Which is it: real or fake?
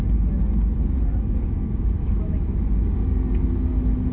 real